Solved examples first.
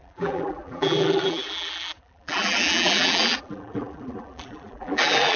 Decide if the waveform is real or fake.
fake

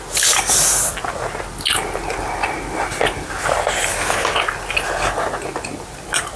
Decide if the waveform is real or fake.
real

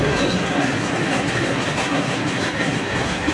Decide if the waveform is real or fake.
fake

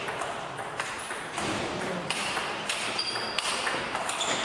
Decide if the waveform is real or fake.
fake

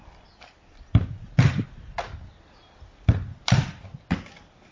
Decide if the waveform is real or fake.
real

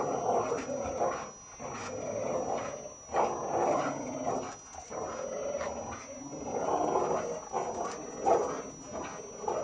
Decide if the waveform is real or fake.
real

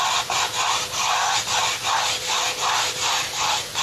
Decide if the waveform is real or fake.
real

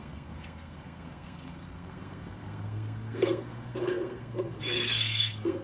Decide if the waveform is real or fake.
fake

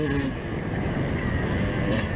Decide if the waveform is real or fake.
real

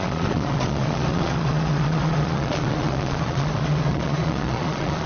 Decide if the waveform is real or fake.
fake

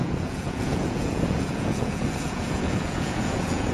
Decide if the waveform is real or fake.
fake